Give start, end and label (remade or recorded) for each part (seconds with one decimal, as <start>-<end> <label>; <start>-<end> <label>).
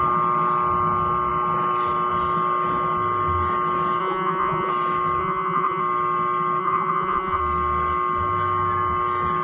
0.0-4.0 recorded; 4.0-4.7 remade; 4.7-5.2 recorded; 5.2-5.8 remade; 5.8-6.6 recorded; 6.6-7.4 remade; 7.4-9.4 recorded